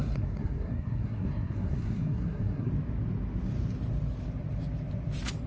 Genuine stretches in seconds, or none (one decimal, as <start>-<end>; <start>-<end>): 2.7-5.5